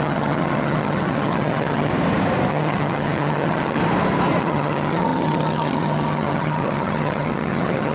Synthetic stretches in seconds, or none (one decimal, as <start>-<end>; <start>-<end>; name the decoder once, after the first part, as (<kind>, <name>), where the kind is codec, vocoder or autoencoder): 0.0-1.9 (vocoder, HiFi-GAN); 2.5-3.8; 4.4-7.9